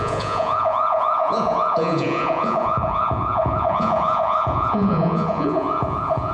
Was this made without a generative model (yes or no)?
no